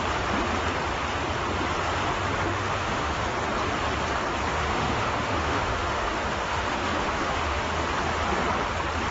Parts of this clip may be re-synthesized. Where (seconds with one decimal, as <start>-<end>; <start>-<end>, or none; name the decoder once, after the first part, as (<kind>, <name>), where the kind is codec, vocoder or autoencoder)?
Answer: 2.5-3.2 (autoencoder, DAC-VAE); 4.5-7.6